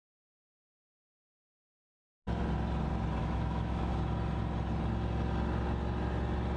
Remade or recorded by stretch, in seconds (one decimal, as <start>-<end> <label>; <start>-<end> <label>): 0.0-1.9 remade; 1.9-3.2 recorded; 3.2-3.9 remade; 3.9-6.6 recorded